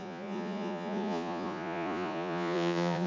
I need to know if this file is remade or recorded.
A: remade